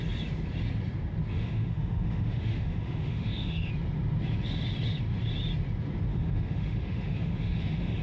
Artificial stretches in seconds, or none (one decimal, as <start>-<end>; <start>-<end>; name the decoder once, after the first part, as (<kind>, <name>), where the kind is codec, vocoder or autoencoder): 1.3-3.7 (autoencoder, DAC-VAE); 6.1-8.0